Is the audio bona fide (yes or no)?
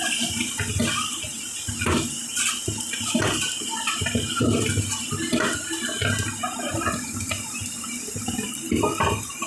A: yes